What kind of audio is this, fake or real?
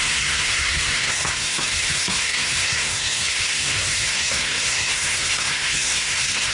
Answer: fake